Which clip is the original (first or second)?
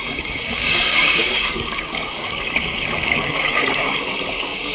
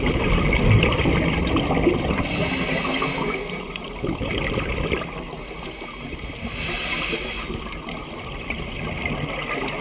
second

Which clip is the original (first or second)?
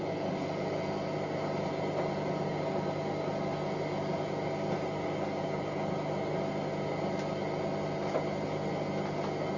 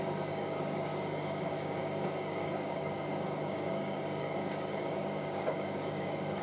first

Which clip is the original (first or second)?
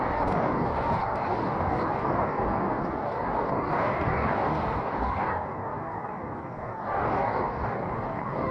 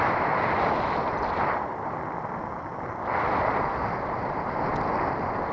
second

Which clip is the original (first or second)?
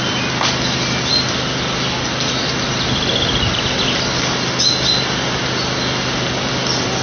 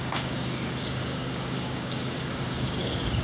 first